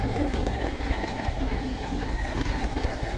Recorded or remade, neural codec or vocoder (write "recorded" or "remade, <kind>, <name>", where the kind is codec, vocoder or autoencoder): remade, codec, SNAC